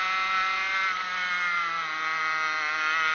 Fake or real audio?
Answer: real